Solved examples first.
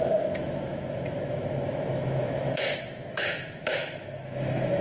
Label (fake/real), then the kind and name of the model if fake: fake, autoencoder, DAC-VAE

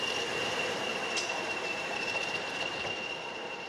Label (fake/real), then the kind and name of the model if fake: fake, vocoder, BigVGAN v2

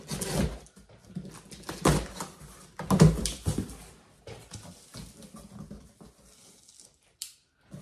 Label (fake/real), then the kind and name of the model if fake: real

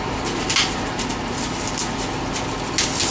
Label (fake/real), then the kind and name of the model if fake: real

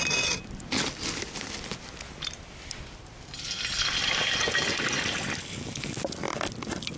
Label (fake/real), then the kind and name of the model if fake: real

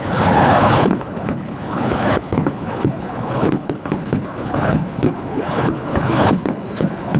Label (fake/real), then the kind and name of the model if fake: fake, codec, HILCodec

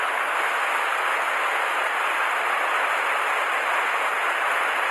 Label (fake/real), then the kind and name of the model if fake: real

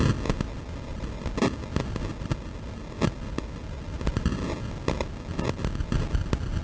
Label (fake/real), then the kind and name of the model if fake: real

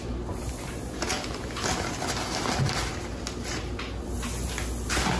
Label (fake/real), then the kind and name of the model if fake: real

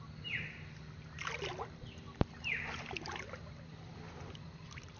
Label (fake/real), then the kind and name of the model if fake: real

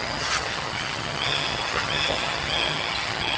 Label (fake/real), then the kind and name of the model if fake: fake, vocoder, HiFi-GAN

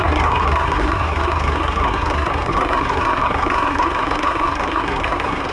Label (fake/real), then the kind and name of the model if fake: fake, codec, SNAC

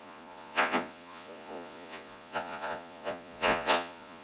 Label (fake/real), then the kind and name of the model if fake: fake, vocoder, Vocos